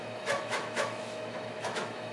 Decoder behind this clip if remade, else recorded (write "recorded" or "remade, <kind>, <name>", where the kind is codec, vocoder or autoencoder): remade, autoencoder, DAC-VAE